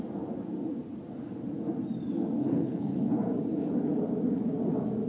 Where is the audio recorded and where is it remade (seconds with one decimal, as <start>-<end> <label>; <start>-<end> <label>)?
0.0-2.4 recorded; 2.4-3.1 remade; 3.1-5.1 recorded